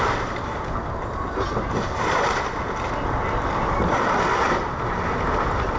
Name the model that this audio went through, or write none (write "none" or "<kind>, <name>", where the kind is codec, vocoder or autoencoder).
none